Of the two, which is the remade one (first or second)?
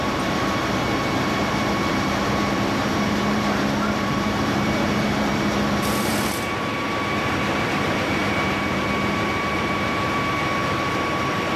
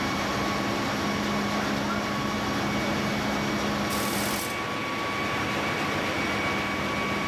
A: first